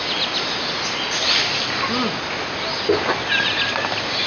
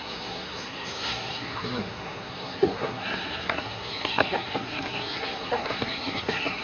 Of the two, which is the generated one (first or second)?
second